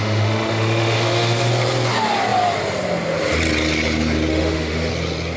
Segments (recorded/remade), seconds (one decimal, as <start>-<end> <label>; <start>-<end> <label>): 0.0-1.5 remade; 1.5-4.3 recorded; 4.3-4.9 remade; 4.9-5.4 recorded